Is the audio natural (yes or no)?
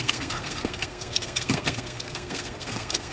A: no